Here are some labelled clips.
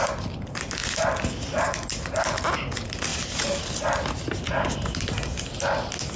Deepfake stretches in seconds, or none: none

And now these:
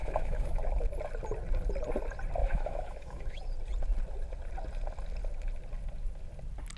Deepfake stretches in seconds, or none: 0.0-0.6 (autoencoder, DAC-VAE); 2.4-3.4

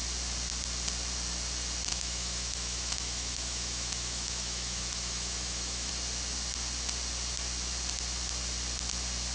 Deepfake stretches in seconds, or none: 1.9-5.9 (autoencoder, DAC-VAE)

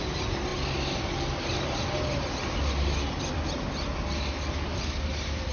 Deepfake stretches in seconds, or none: none

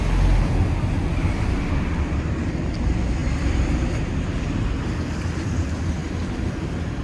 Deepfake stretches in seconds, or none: none

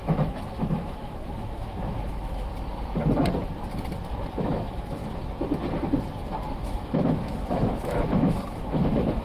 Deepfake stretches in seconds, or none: 0.0-2.5 (autoencoder, DAC-VAE); 4.3-5.0; 6.5-9.2